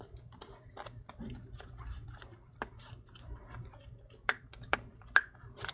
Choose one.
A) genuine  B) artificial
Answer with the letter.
B